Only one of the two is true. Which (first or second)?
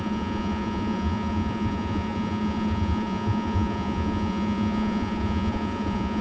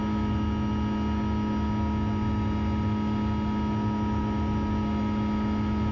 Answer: second